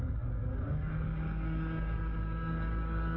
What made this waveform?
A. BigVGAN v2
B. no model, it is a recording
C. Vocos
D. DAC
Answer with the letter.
D